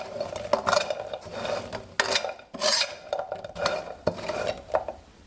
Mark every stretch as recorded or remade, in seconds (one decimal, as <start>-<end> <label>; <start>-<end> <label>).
0.0-5.3 recorded